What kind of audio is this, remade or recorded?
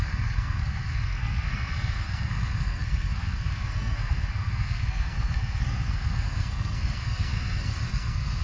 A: remade